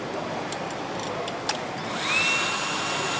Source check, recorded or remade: recorded